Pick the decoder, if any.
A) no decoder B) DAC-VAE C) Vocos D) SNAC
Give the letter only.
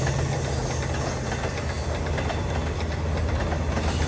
A